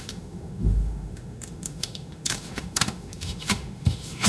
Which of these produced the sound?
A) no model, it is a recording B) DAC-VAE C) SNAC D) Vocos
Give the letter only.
B